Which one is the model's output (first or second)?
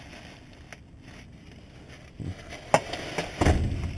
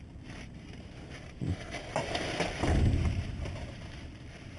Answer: second